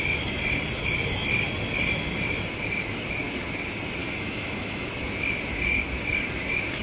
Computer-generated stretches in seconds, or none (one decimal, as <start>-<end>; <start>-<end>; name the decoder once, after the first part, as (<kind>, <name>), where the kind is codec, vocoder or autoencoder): 4.0-4.9 (autoencoder, DAC-VAE)